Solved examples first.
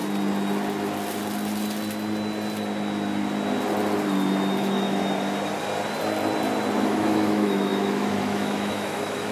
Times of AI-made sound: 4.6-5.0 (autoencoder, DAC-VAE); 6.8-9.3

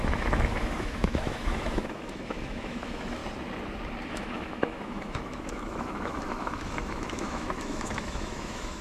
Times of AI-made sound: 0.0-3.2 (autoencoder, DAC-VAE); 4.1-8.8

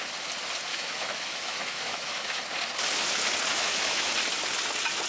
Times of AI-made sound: 0.7-2.4 (autoencoder, DAC-VAE); 3.5-4.1

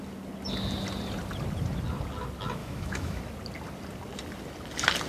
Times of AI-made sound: 2.6-3.2 (autoencoder, DAC-VAE)

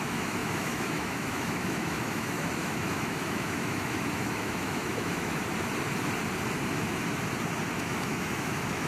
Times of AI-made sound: 0.0-5.4 (autoencoder, DAC-VAE); 7.7-8.9

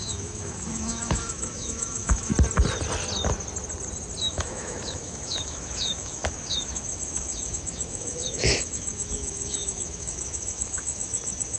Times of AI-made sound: 0.0-2.3 (autoencoder, DAC-VAE); 4.2-11.6

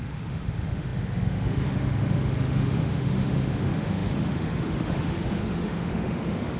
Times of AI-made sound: 0.0-6.6 (autoencoder, DAC-VAE)